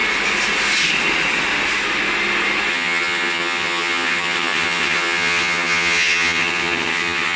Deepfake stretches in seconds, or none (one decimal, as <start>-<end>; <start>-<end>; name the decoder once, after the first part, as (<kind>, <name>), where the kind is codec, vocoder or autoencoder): 2.7-7.4 (vocoder, HiFi-GAN)